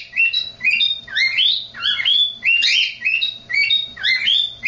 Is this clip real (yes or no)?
yes